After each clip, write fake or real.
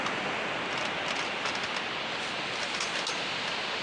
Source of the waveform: real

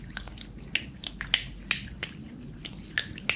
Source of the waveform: real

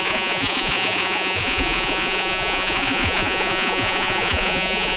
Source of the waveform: fake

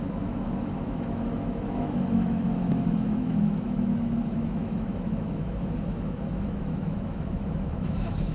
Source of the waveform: fake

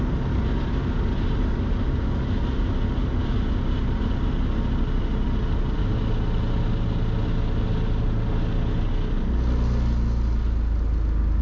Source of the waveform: real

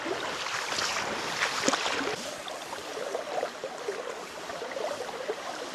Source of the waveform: real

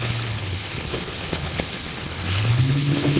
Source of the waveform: fake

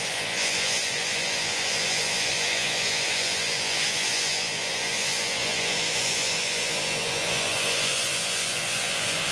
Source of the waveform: fake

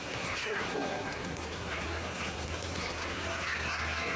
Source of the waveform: fake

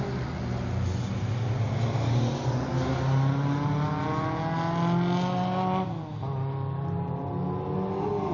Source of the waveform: real